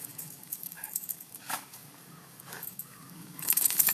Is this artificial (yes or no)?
yes